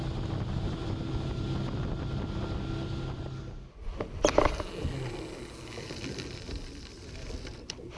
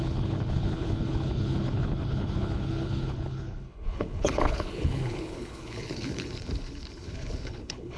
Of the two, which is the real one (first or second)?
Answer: first